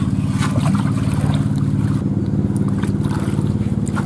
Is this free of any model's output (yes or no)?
yes